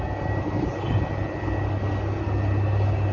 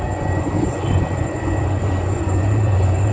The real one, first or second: first